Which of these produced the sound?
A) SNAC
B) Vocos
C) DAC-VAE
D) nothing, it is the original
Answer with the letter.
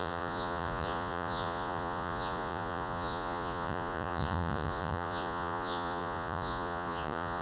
B